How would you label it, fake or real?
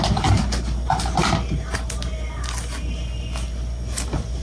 real